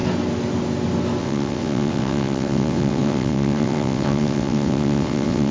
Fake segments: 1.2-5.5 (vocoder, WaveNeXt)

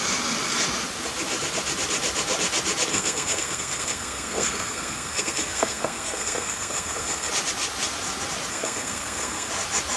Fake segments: 2.9-7.3 (codec, SNAC); 8.5-9.5

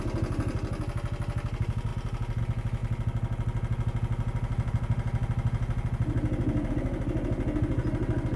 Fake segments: none